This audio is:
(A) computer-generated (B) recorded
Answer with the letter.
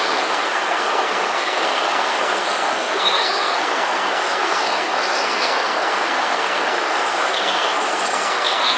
A